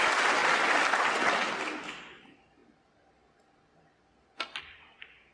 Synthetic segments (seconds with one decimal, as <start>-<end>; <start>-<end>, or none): none

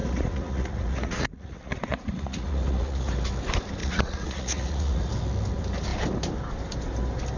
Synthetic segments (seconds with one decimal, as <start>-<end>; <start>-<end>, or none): 0.0-3.1; 3.8-5.1

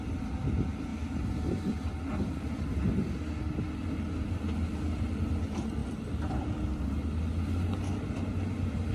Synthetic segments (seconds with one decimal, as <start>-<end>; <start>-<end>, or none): 0.9-1.7; 5.8-6.9

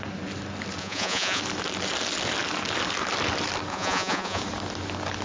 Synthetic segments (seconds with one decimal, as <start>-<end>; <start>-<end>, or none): 0.8-1.4; 3.7-4.4

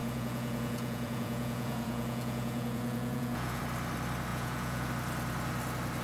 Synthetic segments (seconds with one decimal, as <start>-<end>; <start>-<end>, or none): 0.0-3.6; 4.3-4.9

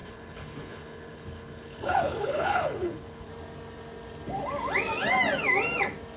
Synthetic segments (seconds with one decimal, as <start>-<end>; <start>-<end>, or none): 0.0-3.3

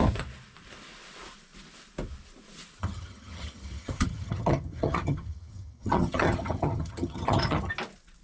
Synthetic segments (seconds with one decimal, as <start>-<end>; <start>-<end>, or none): 2.8-7.7